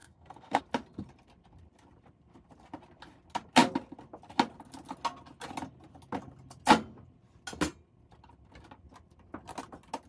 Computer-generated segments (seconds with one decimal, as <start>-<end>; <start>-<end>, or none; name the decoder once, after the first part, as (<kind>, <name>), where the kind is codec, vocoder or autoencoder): 0.0-0.6 (codec, SNAC)